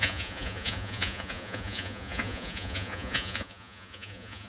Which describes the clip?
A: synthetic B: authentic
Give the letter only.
A